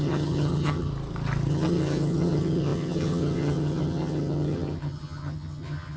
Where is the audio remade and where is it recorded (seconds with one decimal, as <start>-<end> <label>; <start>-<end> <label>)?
0.0-0.9 remade; 0.9-1.5 recorded; 1.5-6.0 remade